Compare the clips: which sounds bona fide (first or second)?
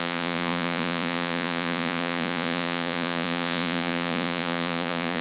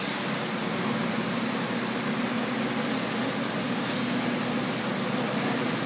second